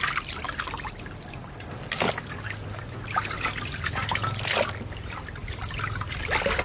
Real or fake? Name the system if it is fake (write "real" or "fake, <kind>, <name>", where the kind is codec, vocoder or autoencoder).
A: real